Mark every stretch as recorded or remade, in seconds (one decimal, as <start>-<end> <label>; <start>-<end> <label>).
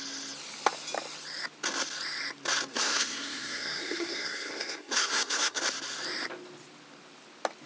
0.0-2.7 recorded; 2.7-5.6 remade; 5.6-7.7 recorded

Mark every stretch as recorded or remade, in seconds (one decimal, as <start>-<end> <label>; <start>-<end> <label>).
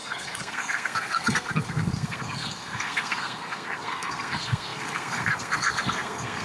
0.0-6.4 remade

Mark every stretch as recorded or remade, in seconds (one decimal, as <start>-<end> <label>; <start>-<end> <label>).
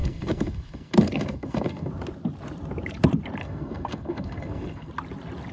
0.0-1.9 remade; 1.9-3.4 recorded; 3.4-4.9 remade; 4.9-5.5 recorded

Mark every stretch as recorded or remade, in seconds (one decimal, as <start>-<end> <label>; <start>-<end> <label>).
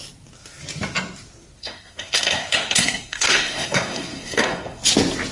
0.0-1.6 recorded; 1.6-4.8 remade; 4.8-5.3 recorded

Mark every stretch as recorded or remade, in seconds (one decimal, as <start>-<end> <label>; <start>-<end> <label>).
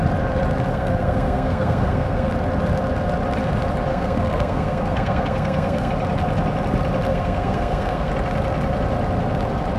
0.0-0.7 recorded; 0.7-2.3 remade; 2.3-3.9 recorded; 3.9-5.9 remade; 5.9-7.1 recorded; 7.1-8.1 remade; 8.1-9.8 recorded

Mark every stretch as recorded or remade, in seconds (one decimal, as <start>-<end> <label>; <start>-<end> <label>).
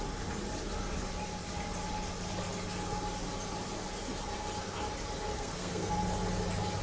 0.0-5.3 recorded; 5.3-5.9 remade; 5.9-6.8 recorded